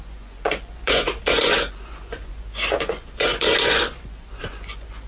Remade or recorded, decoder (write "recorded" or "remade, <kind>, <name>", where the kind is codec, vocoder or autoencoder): remade, vocoder, Vocos